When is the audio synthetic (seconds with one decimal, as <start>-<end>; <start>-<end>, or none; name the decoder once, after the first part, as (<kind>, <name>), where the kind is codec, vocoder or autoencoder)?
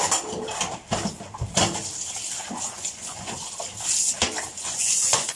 2.4-3.6 (vocoder, Vocos); 4.5-5.4